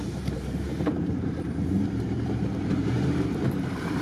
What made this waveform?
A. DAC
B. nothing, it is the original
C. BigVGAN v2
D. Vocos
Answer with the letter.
C